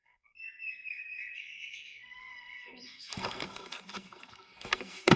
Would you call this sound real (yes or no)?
no